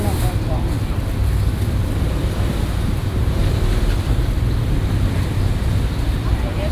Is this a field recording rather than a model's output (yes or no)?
no